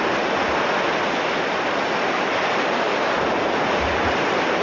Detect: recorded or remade recorded